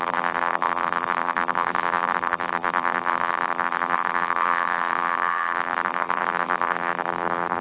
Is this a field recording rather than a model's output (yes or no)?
no